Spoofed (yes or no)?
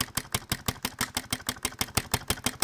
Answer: no